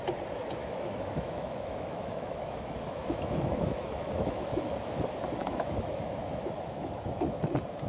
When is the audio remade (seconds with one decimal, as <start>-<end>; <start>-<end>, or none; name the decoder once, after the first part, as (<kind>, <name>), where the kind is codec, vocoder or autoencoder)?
0.6-5.0 (autoencoder, DAC-VAE); 5.4-7.4